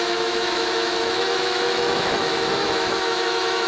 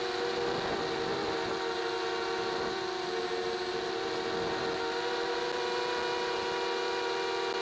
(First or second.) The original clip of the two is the second